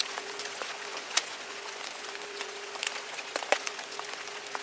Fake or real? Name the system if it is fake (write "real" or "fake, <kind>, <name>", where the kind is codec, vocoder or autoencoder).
fake, vocoder, Vocos